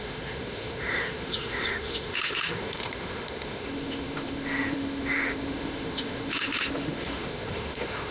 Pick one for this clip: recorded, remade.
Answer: remade